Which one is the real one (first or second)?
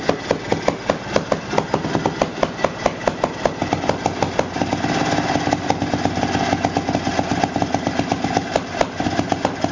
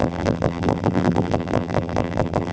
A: first